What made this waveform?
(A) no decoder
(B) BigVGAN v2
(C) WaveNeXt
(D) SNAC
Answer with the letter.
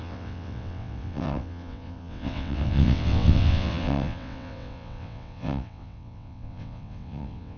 C